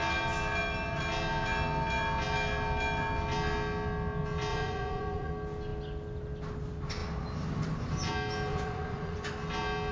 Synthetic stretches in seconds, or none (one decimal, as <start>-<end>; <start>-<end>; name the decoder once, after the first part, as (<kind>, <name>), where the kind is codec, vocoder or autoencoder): 4.5-5.3 (vocoder, Vocos); 8.5-9.3